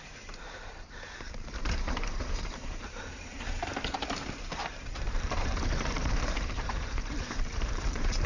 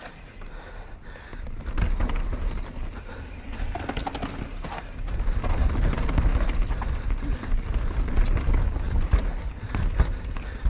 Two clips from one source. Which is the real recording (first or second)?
second